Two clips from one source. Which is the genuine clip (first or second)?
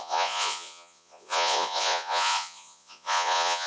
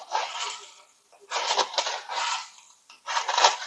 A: second